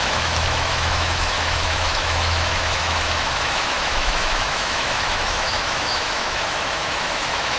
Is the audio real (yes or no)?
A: no